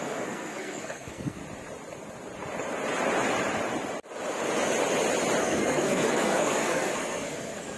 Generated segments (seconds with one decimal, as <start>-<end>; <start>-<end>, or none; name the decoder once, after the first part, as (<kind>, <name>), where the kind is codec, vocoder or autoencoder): 0.0-1.4 (codec, SNAC); 5.4-7.8